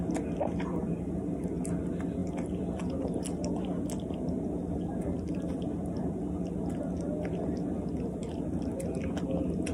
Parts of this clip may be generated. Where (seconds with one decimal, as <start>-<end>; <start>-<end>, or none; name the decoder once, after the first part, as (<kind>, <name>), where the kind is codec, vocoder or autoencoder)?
8.2-8.7 (vocoder, BigVGAN v2)